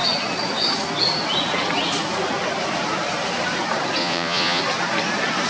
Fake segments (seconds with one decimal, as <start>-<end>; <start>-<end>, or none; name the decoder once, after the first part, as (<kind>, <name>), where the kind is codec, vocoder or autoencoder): 4.0-4.6 (vocoder, Vocos)